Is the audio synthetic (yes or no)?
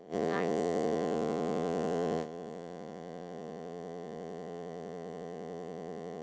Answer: yes